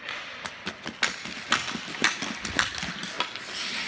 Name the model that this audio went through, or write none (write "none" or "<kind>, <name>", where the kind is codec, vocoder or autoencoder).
none